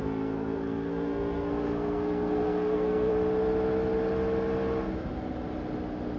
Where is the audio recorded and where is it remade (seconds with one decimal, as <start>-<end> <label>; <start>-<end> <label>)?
0.0-3.1 remade; 3.1-6.2 recorded